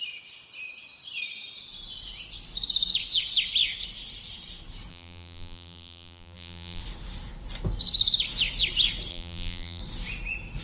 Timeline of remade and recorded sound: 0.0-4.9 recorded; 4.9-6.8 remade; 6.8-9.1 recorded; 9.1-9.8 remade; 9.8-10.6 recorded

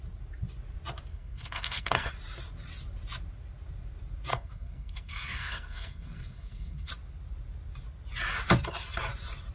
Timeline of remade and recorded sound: 0.0-1.1 recorded; 1.1-2.1 remade; 2.1-4.3 recorded; 4.3-6.9 remade; 6.9-9.5 recorded

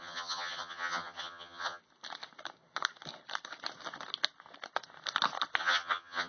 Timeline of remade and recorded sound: 0.0-1.8 remade; 1.8-5.6 recorded; 5.6-6.3 remade

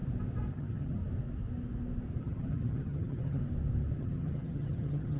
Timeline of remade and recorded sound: 0.0-0.5 recorded; 0.5-1.0 remade; 1.0-2.2 recorded; 2.2-3.4 remade; 3.4-4.0 recorded; 4.0-5.2 remade

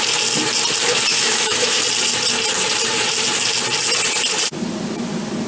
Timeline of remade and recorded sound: 0.0-1.1 recorded; 1.1-1.8 remade; 1.8-5.5 recorded

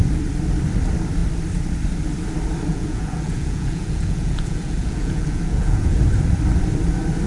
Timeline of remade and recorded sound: 0.0-2.7 recorded; 2.7-6.0 remade; 6.0-7.3 recorded